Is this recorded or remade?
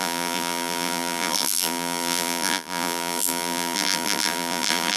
remade